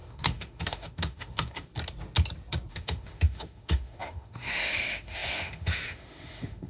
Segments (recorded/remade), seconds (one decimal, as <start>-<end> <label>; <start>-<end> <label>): 0.0-1.7 remade; 1.7-2.7 recorded; 2.7-6.7 remade